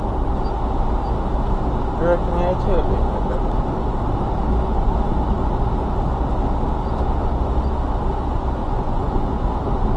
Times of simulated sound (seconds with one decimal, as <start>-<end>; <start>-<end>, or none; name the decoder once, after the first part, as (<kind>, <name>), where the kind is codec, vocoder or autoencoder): 2.8-3.4 (vocoder, Vocos); 8.6-9.4